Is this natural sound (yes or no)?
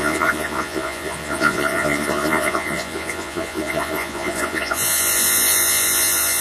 no